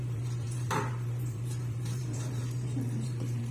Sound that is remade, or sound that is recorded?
remade